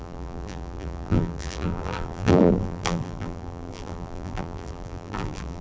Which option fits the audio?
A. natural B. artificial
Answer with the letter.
B